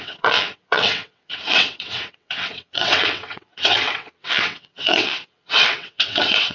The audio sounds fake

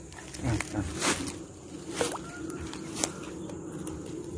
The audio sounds real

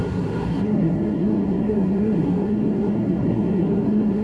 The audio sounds fake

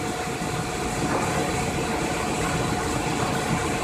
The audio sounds real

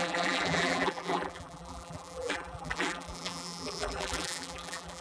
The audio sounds fake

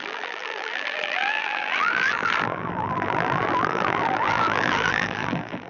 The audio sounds fake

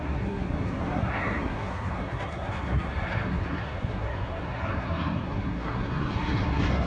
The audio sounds fake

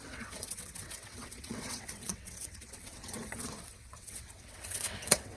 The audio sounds fake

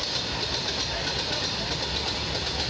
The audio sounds real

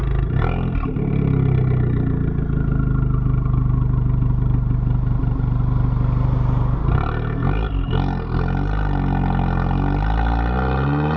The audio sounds real